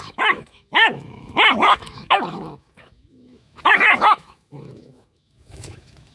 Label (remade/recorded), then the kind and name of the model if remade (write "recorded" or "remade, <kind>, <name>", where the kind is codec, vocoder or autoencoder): remade, autoencoder, DAC-VAE